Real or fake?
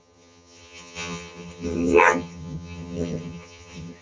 fake